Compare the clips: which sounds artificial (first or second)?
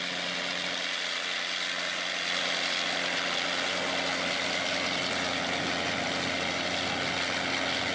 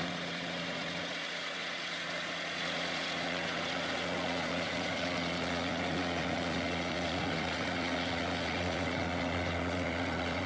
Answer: second